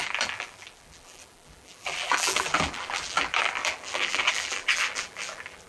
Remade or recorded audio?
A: remade